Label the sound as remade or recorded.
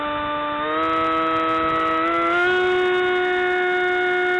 recorded